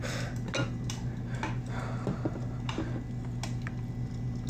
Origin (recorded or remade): recorded